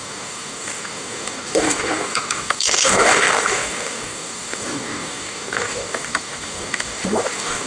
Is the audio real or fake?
fake